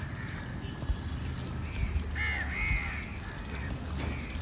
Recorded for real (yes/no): yes